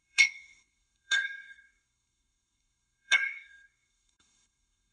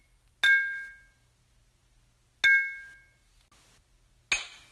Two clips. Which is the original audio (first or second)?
second